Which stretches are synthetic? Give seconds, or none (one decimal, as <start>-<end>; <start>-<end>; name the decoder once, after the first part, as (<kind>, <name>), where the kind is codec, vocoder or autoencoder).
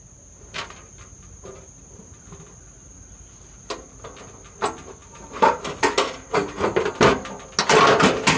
none